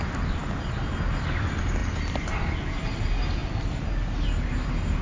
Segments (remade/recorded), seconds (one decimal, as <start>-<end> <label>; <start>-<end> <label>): 0.0-5.0 recorded